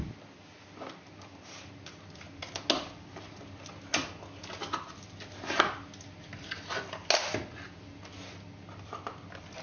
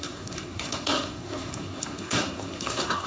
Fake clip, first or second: second